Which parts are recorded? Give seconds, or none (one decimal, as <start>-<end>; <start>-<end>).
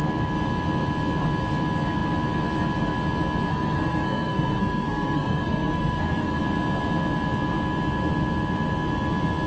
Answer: 0.0-3.5; 6.4-9.5